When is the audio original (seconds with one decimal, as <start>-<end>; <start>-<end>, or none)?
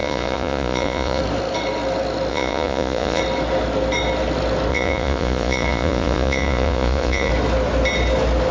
1.2-2.3; 3.2-4.7; 7.3-8.5